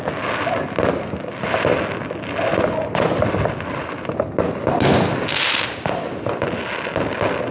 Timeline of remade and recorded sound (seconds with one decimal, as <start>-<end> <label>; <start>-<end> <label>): 0.0-7.5 recorded